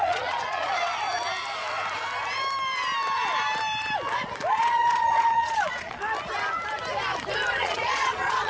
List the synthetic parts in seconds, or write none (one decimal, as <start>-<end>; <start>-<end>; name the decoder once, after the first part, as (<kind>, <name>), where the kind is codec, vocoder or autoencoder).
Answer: 0.0-0.9 (vocoder, Vocos); 4.5-6.0; 7.5-8.5